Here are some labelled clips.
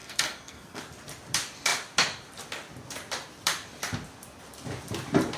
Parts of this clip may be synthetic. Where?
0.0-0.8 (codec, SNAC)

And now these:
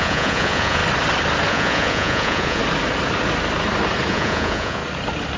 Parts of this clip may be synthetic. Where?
0.0-0.8 (vocoder, Vocos); 1.5-2.6; 4.1-4.8

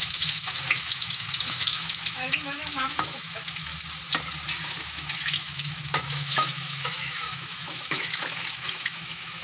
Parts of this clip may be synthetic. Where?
0.0-3.7 (autoencoder, DAC-VAE); 4.7-9.4

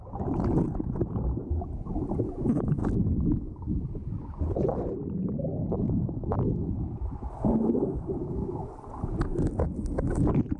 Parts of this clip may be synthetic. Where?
2.8-3.8 (autoencoder, DAC-VAE); 5.5-6.7; 8.2-8.7

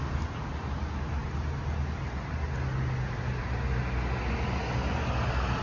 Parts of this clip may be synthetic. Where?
none

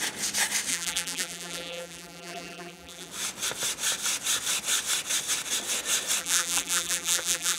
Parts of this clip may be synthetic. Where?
0.7-3.1 (vocoder, BigVGAN v2); 6.2-7.6

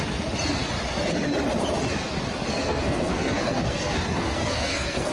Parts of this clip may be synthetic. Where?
2.5-5.1 (codec, SNAC)